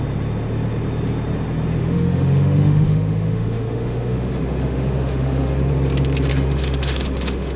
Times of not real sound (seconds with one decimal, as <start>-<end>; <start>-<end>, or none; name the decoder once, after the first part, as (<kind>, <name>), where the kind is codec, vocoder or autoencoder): 1.8-5.7 (autoencoder, DAC-VAE); 6.3-7.6